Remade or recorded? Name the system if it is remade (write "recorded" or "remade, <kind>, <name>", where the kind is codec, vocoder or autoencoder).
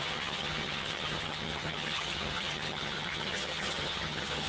remade, vocoder, HiFi-GAN